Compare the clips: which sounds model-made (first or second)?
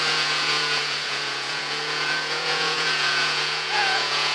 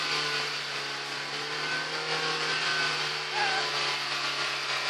first